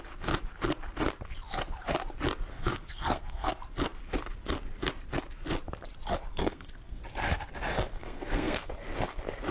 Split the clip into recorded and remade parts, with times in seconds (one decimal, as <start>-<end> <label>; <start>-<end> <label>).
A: 0.0-2.5 recorded; 2.5-3.5 remade; 3.5-6.4 recorded; 6.4-7.0 remade; 7.0-7.9 recorded; 7.9-8.7 remade; 8.7-9.5 recorded